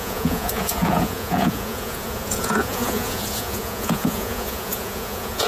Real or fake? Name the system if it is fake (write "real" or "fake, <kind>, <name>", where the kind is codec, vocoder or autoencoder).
fake, vocoder, Vocos